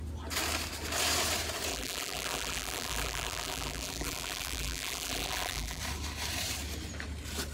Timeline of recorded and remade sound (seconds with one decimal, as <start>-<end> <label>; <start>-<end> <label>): 0.0-1.7 recorded; 1.7-5.8 remade; 5.8-7.5 recorded